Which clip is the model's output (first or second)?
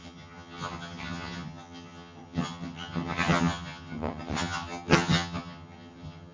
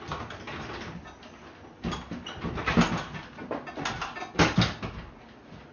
first